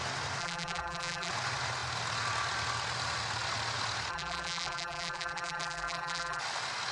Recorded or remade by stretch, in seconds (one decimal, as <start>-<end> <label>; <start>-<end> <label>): 0.0-0.4 recorded; 0.4-1.3 remade; 1.3-4.1 recorded; 4.1-6.4 remade; 6.4-6.9 recorded

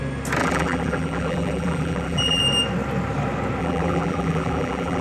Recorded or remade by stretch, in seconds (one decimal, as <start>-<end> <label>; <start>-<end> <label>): 0.0-0.4 recorded; 0.4-2.4 remade; 2.4-3.6 recorded; 3.6-5.0 remade